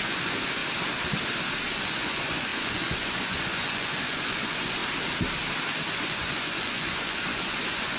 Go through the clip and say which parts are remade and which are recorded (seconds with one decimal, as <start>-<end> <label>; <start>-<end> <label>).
0.0-0.6 remade; 0.6-1.6 recorded; 1.6-4.8 remade; 4.8-5.9 recorded; 5.9-8.0 remade